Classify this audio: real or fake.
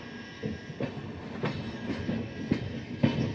real